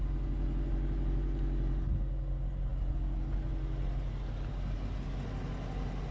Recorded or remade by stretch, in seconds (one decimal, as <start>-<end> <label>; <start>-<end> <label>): 0.0-6.1 recorded